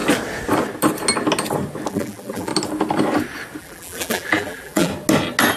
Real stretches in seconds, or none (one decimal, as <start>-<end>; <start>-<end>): 0.0-1.9; 2.5-3.6; 4.9-5.6